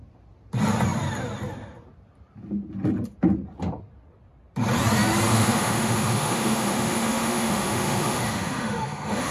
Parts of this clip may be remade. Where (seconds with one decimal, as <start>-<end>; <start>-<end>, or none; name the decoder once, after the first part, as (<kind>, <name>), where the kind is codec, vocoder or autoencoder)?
5.3-9.3 (autoencoder, DAC-VAE)